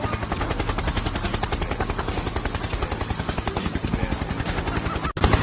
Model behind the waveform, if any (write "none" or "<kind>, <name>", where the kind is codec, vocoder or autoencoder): none